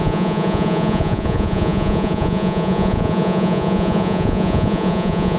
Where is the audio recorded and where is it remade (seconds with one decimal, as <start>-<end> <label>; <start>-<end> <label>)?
0.0-5.4 remade